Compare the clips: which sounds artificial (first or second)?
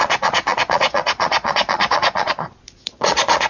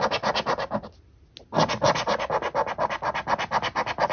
first